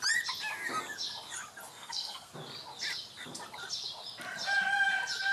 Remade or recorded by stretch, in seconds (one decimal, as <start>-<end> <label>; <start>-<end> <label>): 0.0-1.7 recorded; 1.7-2.3 remade; 2.3-5.3 recorded